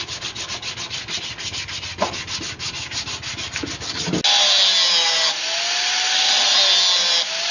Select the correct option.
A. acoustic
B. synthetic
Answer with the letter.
A